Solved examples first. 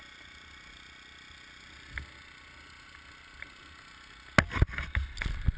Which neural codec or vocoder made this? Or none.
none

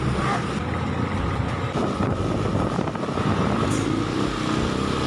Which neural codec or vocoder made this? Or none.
none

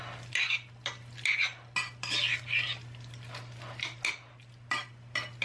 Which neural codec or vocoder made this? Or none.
none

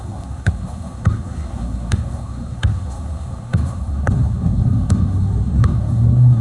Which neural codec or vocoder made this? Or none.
codec, SNAC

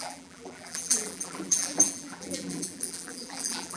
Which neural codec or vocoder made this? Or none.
vocoder, BigVGAN v2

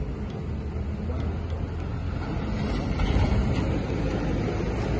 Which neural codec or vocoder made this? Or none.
none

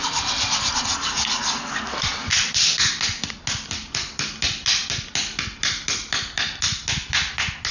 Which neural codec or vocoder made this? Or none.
none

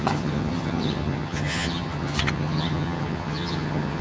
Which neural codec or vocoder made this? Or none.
vocoder, HiFi-GAN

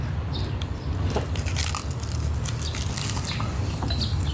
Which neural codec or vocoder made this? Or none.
none